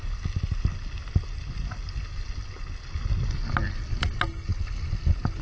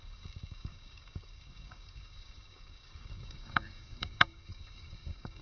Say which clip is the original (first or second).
first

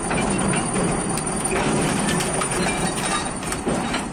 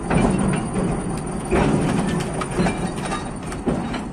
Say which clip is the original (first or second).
second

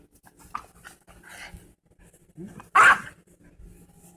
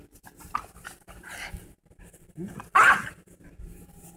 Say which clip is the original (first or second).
first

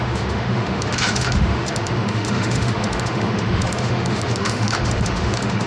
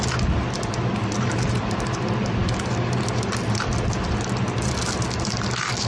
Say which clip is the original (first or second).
second